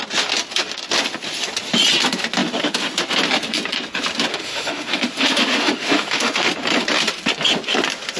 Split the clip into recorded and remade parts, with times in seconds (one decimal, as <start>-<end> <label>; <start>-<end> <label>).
0.0-4.3 recorded; 4.3-6.5 remade; 6.5-8.2 recorded